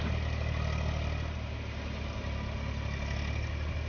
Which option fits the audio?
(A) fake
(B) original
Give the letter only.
B